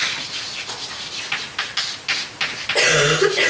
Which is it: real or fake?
real